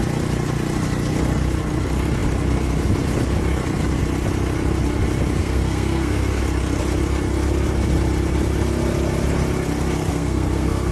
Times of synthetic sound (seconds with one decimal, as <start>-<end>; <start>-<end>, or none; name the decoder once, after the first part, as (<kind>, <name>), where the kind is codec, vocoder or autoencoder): 5.4-6.4 (codec, SNAC); 10.1-10.9